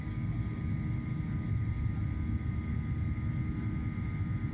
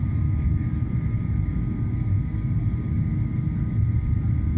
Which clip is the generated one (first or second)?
second